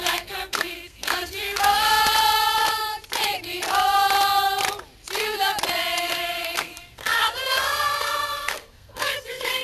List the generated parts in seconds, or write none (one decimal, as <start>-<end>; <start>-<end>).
0.0-2.0; 6.0-9.6